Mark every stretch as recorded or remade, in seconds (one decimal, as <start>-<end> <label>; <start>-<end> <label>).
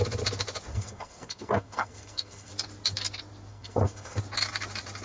0.0-0.7 recorded; 0.7-2.5 remade; 2.5-3.5 recorded; 3.5-4.2 remade; 4.2-5.0 recorded